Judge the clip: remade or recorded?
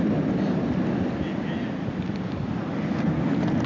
recorded